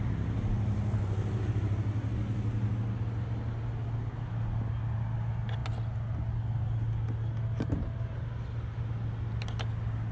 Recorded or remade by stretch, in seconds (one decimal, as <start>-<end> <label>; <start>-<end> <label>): 0.0-10.1 recorded

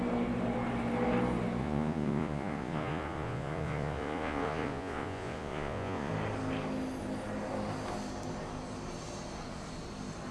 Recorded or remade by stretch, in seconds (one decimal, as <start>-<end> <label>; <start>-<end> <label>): 0.0-1.6 recorded; 1.6-6.1 remade; 6.1-10.3 recorded

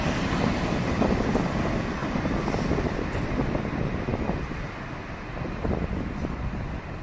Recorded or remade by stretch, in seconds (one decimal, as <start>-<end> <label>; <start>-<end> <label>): 0.0-7.0 recorded

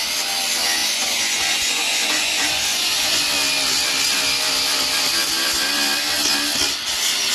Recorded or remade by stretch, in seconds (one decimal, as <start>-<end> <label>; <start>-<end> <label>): 0.0-0.8 recorded; 0.8-3.3 remade; 3.3-7.3 recorded